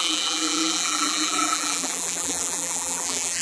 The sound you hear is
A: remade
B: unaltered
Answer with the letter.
A